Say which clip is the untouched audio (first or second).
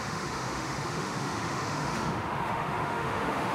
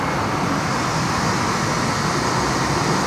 second